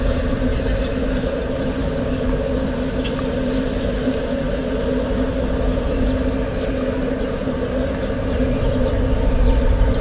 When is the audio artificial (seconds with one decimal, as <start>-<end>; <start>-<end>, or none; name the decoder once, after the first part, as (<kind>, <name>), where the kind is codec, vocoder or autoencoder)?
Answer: 1.8-2.5 (codec, DAC)